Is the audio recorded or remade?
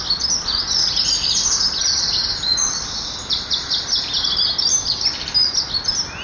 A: recorded